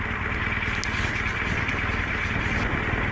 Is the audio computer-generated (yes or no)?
no